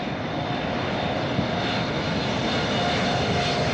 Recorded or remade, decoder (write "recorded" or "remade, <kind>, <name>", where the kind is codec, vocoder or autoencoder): recorded